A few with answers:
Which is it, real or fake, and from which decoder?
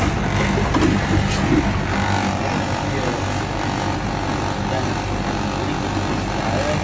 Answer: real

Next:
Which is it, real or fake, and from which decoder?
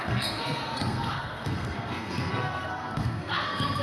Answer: fake, codec, SNAC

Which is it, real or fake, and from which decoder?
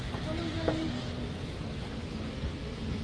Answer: real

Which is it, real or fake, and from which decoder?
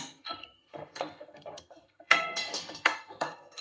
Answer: fake, codec, SNAC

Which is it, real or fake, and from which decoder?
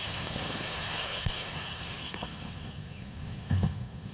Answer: fake, codec, SNAC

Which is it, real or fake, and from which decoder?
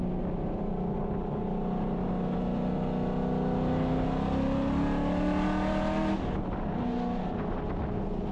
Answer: real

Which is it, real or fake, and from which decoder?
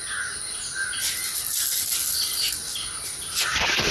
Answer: real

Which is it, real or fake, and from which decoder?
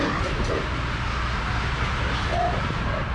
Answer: real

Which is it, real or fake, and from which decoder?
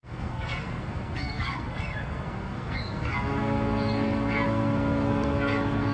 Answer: fake, codec, SNAC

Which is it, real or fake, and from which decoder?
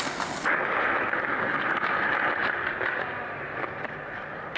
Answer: real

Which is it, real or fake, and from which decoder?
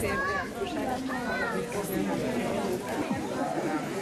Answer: real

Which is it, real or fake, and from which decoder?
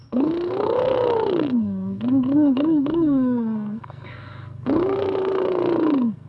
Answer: fake, codec, SNAC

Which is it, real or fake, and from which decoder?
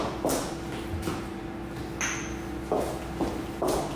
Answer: real